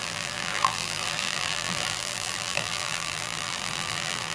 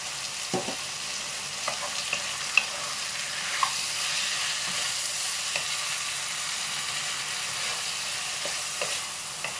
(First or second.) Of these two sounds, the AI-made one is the first